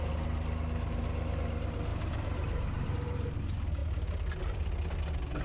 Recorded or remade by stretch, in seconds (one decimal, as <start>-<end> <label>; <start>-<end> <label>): 0.0-1.9 recorded; 1.9-2.9 remade; 2.9-5.4 recorded